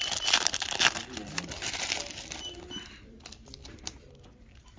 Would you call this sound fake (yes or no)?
no